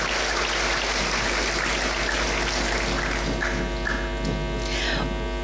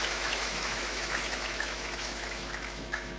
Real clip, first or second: first